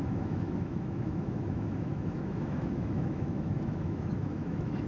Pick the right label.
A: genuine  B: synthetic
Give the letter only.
B